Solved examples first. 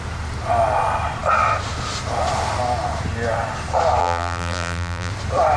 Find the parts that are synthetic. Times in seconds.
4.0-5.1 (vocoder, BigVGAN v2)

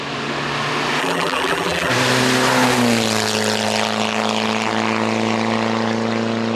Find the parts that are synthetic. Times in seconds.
1.0-1.9 (vocoder, BigVGAN v2)

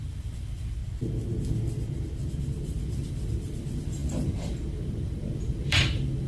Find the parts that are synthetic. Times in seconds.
0.0-0.8 (vocoder, BigVGAN v2); 2.4-6.3